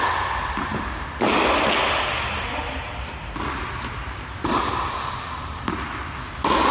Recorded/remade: recorded